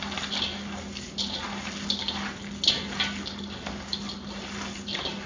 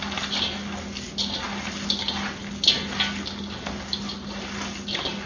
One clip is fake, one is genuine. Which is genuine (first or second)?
second